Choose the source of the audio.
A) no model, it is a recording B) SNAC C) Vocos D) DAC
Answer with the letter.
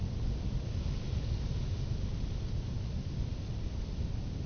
A